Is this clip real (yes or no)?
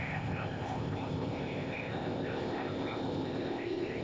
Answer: no